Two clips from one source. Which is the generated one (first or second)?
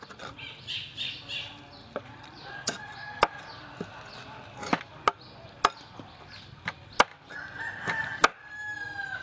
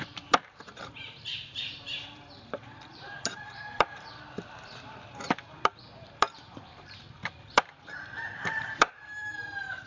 second